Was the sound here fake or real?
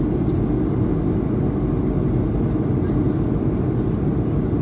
real